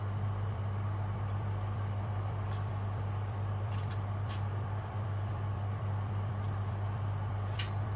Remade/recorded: remade